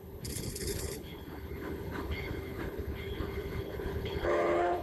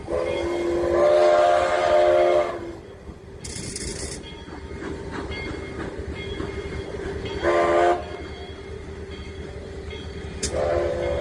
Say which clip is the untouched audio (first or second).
second